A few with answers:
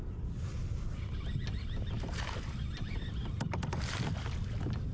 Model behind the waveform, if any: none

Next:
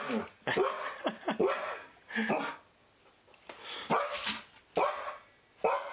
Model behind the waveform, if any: none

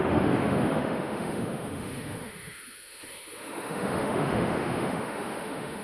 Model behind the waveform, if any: autoencoder, DAC-VAE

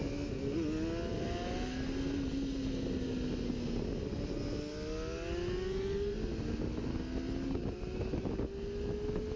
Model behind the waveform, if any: none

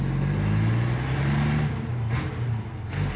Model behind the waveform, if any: none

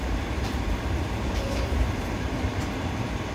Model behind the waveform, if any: vocoder, BigVGAN v2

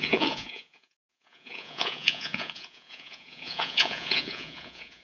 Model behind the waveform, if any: vocoder, Vocos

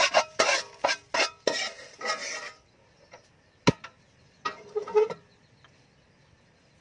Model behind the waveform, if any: none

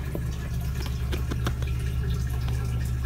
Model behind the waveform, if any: none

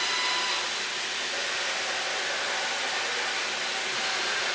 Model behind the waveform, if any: none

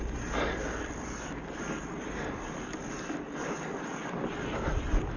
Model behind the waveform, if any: none